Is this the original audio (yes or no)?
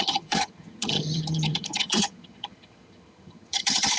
no